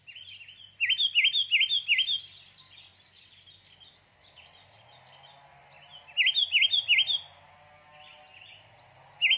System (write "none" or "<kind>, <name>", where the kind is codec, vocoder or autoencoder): none